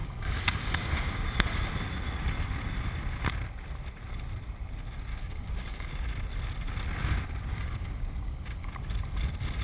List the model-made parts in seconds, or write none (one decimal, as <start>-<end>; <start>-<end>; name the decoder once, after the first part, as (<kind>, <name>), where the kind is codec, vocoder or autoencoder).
0.0-1.7 (codec, DAC); 5.1-5.9; 7.5-8.7